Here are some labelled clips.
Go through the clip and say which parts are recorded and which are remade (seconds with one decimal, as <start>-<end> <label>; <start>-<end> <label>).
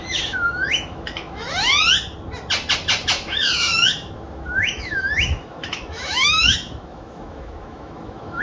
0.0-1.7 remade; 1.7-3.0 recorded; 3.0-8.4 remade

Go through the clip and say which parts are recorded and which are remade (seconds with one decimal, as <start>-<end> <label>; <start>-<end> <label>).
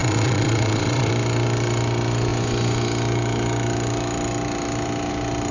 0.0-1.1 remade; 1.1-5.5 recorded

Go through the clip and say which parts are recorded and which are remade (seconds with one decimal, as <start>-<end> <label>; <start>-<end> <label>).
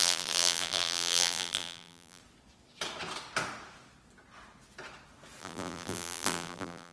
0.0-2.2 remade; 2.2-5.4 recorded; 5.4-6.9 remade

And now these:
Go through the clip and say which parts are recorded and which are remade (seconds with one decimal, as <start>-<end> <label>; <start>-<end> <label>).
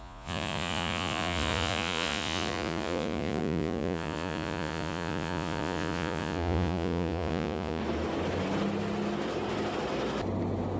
0.0-7.8 remade; 7.8-10.8 recorded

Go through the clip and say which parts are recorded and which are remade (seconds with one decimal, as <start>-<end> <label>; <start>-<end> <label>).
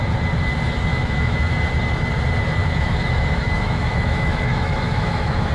0.0-0.9 recorded; 0.9-1.5 remade; 1.5-2.6 recorded; 2.6-5.5 remade